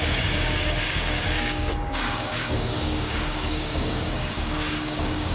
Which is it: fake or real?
fake